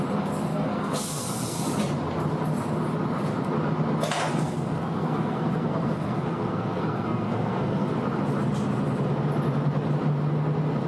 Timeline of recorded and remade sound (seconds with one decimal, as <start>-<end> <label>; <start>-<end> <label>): 0.0-0.5 recorded; 0.5-1.6 remade; 1.6-4.3 recorded; 4.3-7.9 remade; 7.9-10.9 recorded